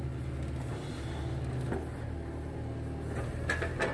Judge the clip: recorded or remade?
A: recorded